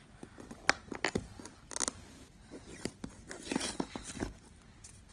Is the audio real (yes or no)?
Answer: yes